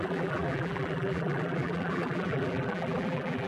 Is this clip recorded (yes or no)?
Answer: no